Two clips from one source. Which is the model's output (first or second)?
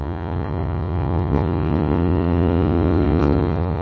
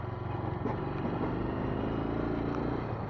first